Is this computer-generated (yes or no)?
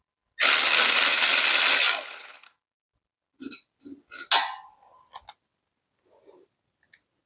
no